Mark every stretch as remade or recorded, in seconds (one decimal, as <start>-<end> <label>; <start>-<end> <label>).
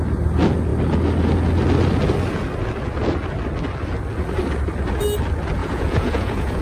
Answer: 0.0-5.6 recorded; 5.6-6.6 remade